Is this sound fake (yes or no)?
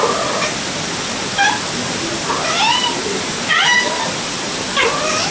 no